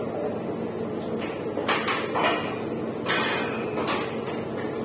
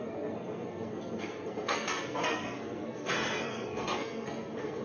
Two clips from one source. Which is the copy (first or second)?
second